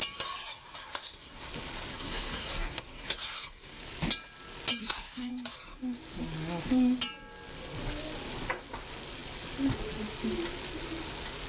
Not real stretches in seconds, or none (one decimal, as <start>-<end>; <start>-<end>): 0.9-1.4; 1.9-3.8; 4.8-5.3